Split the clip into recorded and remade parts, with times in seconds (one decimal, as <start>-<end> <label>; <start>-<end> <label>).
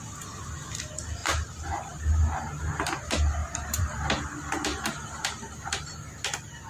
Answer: 0.0-1.2 recorded; 1.2-2.0 remade; 2.0-3.4 recorded; 3.4-4.2 remade; 4.2-4.7 recorded; 4.7-5.9 remade; 5.9-6.7 recorded